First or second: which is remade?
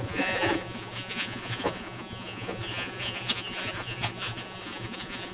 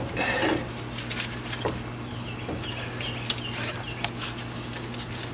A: first